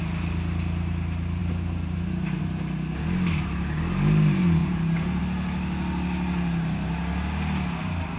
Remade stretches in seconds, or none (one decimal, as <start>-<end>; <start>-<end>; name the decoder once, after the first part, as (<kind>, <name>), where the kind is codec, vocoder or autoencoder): 1.4-2.4 (vocoder, BigVGAN v2); 4.6-5.2